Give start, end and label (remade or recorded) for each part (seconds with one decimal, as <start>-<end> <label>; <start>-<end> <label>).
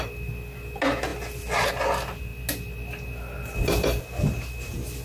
0.0-5.0 recorded